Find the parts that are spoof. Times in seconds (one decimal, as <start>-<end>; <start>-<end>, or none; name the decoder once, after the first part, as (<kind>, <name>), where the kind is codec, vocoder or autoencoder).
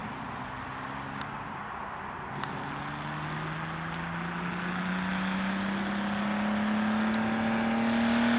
0.0-1.2 (vocoder, BigVGAN v2)